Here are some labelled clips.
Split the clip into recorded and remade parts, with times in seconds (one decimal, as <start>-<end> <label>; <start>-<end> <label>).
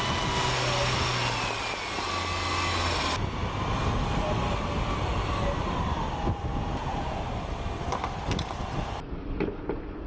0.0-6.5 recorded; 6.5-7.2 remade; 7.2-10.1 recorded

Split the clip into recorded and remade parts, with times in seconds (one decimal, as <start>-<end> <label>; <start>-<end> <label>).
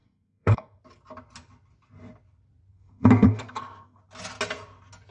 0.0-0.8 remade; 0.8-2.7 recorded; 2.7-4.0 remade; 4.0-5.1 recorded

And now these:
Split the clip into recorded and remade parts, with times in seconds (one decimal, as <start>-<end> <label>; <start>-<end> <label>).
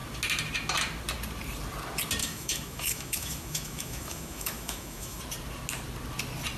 0.0-2.2 recorded; 2.2-5.2 remade; 5.2-6.6 recorded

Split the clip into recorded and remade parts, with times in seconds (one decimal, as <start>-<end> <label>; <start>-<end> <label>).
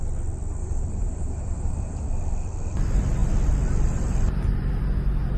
0.0-0.6 recorded; 0.6-2.0 remade; 2.0-5.4 recorded